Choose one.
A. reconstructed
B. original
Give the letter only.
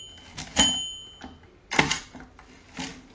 B